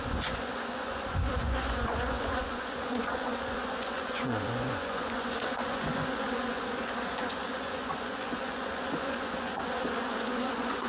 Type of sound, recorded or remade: remade